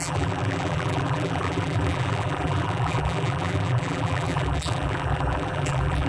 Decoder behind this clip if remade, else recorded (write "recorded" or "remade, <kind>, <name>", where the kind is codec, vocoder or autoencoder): remade, vocoder, BigVGAN v2